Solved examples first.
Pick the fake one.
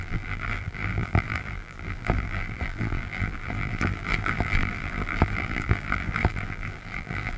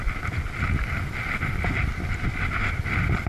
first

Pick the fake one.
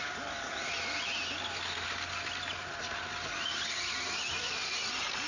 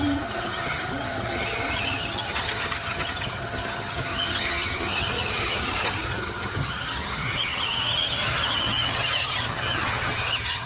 second